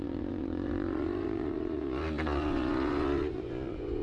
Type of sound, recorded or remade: remade